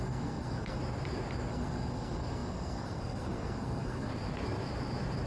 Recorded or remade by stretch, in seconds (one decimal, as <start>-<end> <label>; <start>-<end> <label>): 0.0-0.8 remade; 0.8-1.5 recorded; 1.5-4.1 remade; 4.1-5.3 recorded